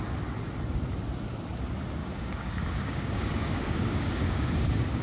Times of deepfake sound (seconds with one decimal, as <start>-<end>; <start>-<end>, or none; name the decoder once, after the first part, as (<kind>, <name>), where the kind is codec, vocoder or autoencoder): 2.0-5.0 (codec, DAC)